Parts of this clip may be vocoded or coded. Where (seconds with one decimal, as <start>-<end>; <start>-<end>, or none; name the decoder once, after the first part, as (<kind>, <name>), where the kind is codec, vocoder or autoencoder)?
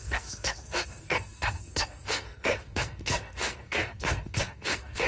0.0-5.1 (codec, SNAC)